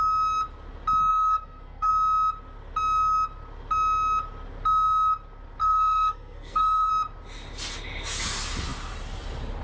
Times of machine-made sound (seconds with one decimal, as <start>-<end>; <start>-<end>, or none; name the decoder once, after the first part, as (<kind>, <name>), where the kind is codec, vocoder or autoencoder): 1.1-1.9 (codec, SNAC); 5.6-6.9